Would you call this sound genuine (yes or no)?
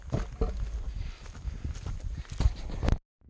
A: yes